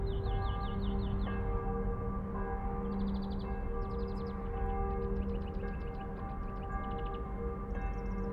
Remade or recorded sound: recorded